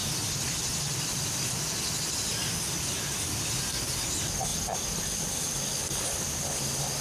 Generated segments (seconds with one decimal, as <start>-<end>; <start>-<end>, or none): none